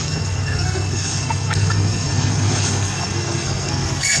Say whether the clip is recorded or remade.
remade